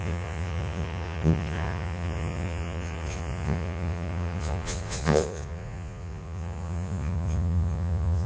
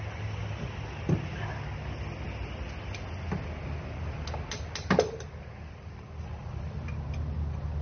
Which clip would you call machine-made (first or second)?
first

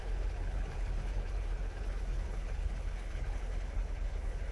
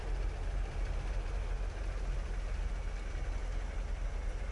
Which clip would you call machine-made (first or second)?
first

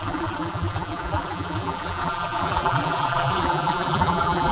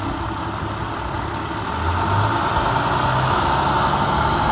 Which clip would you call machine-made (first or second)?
first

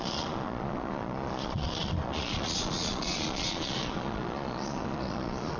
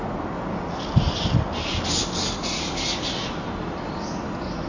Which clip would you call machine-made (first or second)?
first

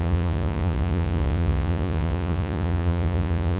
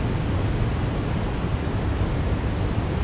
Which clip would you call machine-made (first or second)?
first